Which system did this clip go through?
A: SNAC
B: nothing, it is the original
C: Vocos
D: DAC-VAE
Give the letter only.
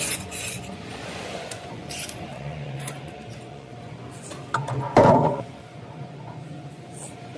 C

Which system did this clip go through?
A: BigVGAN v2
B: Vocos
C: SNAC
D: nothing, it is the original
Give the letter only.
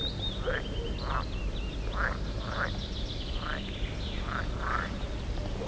D